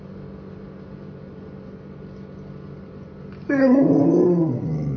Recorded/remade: recorded